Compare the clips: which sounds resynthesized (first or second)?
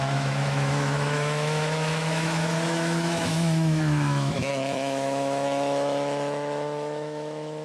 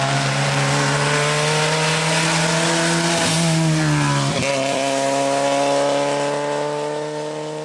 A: first